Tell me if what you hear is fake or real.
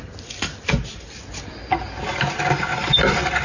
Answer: real